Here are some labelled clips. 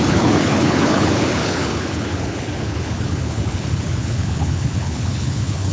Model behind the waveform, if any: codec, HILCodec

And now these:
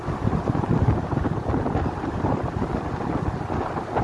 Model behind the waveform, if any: none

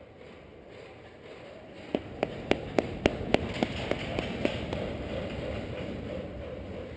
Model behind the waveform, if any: none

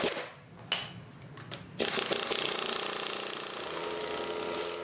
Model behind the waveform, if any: none